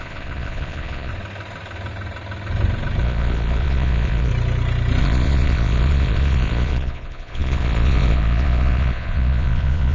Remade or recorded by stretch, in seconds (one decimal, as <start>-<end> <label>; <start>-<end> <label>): 0.0-1.1 remade; 1.1-3.0 recorded; 3.0-4.3 remade; 4.3-5.0 recorded; 5.0-9.9 remade